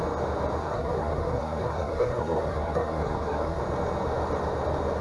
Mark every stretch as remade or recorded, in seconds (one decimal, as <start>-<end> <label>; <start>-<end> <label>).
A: 0.0-0.6 recorded; 0.6-3.6 remade; 3.6-5.0 recorded